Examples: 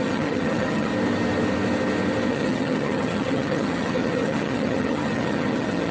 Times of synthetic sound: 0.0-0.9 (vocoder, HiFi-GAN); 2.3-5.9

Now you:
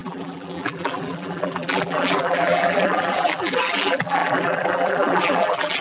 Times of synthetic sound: 0.0-5.8 (vocoder, BigVGAN v2)

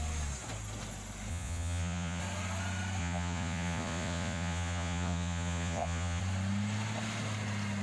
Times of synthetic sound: 1.3-2.2 (vocoder, Vocos); 3.0-6.2